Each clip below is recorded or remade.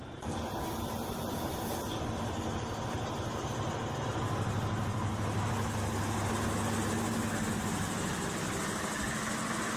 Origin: recorded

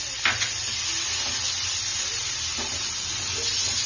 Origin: recorded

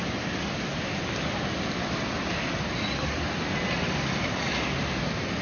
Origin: recorded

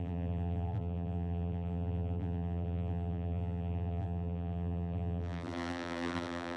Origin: remade